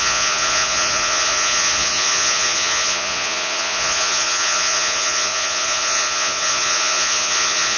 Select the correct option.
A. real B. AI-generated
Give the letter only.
B